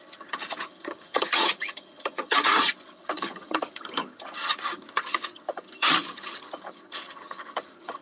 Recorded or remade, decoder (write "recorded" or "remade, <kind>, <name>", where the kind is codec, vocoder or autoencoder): remade, vocoder, HiFi-GAN